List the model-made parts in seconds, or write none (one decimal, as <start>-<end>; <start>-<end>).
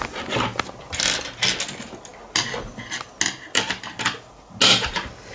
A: none